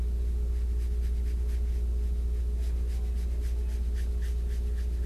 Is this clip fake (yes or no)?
no